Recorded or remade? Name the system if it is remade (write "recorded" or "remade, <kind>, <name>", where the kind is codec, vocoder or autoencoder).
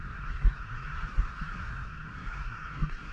remade, codec, SNAC